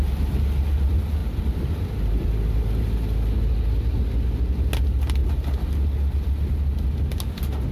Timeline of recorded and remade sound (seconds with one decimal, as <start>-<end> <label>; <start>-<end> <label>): 0.0-7.7 recorded